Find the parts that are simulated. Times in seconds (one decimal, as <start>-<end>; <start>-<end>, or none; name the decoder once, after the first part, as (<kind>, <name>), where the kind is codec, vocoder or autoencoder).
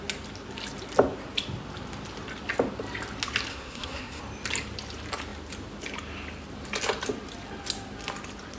3.5-4.2 (codec, SNAC)